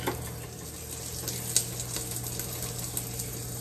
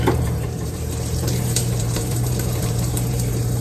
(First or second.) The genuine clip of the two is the first